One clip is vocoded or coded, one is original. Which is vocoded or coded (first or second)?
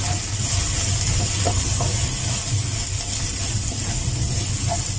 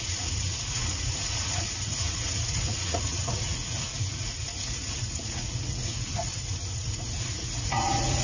second